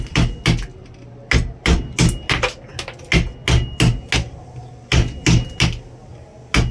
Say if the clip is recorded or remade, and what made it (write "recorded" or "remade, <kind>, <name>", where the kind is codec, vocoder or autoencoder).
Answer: recorded